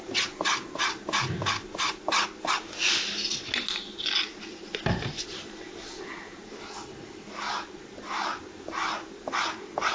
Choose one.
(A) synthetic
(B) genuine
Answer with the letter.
B